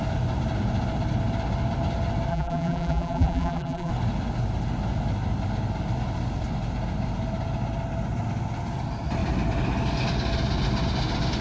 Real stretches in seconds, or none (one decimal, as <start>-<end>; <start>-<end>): 0.0-2.3; 3.9-11.4